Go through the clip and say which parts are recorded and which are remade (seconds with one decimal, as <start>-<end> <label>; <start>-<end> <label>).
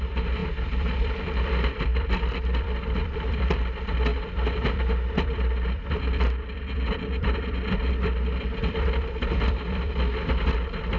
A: 0.0-11.0 remade